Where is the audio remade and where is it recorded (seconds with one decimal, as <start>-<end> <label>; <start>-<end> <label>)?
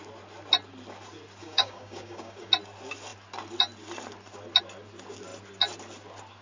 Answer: 0.0-1.4 recorded; 1.4-2.5 remade; 2.5-6.4 recorded